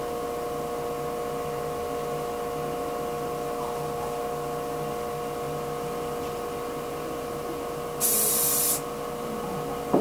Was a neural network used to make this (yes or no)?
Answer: no